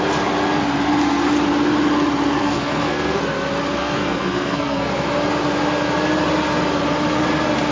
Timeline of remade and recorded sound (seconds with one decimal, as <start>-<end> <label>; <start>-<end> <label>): 0.0-2.4 recorded; 2.4-3.2 remade; 3.2-3.8 recorded; 3.8-4.9 remade; 4.9-7.7 recorded